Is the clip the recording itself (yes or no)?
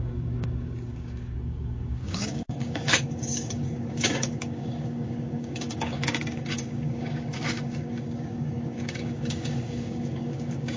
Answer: no